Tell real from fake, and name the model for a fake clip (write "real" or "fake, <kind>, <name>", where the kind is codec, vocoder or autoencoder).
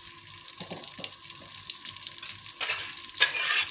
real